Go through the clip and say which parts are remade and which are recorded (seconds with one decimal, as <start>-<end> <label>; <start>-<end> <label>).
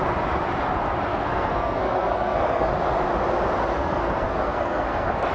0.0-1.1 recorded; 1.1-2.7 remade; 2.7-3.8 recorded; 3.8-5.3 remade